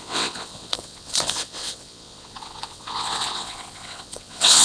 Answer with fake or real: fake